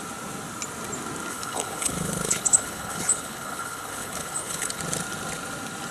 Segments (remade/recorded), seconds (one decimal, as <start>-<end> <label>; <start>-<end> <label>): 0.0-1.3 recorded; 1.3-4.8 remade; 4.8-5.9 recorded